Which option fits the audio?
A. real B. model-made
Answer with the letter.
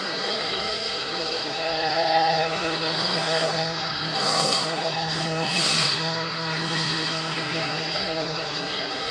B